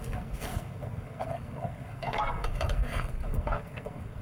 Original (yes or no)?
no